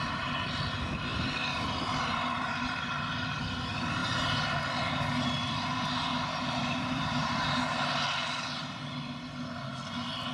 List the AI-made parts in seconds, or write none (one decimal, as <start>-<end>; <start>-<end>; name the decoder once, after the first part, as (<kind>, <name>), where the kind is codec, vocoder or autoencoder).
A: 1.1-3.4 (vocoder, BigVGAN v2); 6.6-7.4